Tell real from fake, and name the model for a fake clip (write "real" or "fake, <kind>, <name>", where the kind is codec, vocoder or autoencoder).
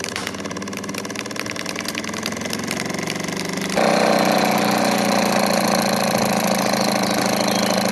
real